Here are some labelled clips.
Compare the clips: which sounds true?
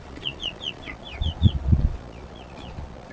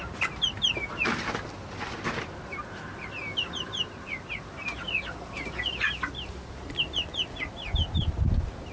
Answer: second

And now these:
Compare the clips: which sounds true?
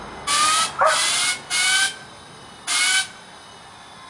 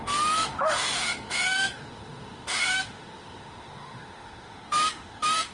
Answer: first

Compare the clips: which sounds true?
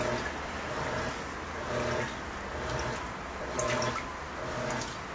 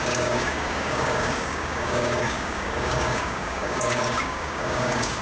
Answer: first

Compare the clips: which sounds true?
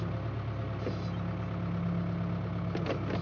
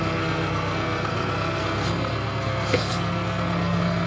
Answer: first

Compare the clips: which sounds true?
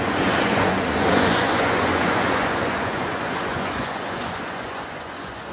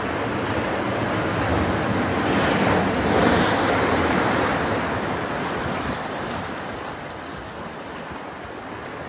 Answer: second